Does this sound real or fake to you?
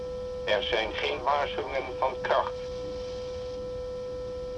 real